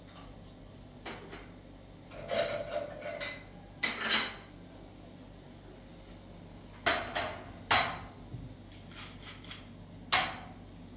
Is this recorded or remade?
recorded